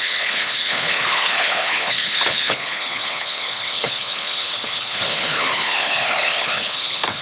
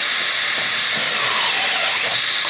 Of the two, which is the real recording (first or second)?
second